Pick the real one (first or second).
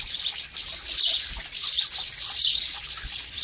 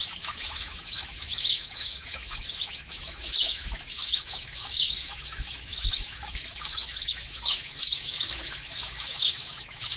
first